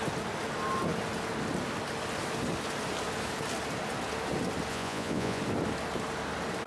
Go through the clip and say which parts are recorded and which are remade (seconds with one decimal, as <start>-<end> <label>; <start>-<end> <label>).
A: 0.0-4.7 recorded; 4.7-5.4 remade; 5.4-6.7 recorded